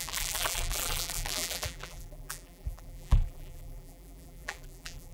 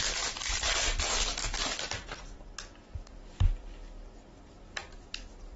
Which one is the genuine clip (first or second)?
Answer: second